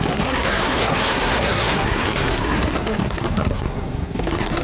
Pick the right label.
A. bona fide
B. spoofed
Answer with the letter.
B